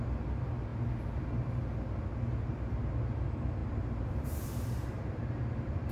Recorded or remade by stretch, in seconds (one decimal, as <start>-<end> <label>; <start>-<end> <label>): 0.0-3.6 recorded; 3.6-5.4 remade; 5.4-5.9 recorded